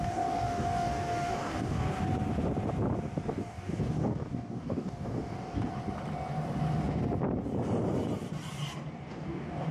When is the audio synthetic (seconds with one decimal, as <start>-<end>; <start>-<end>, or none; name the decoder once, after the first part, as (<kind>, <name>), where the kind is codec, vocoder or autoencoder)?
0.0-2.0 (codec, DAC); 3.3-5.7; 9.1-9.7